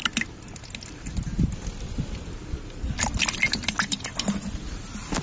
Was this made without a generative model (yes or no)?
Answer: yes